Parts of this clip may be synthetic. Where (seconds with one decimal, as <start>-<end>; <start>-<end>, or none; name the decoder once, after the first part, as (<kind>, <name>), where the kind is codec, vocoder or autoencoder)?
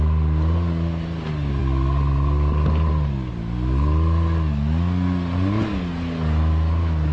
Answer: none